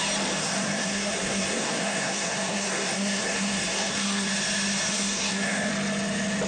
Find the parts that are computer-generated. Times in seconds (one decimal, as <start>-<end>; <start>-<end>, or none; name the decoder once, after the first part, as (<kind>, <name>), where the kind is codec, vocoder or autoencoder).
0.4-4.3 (codec, SNAC); 4.9-5.7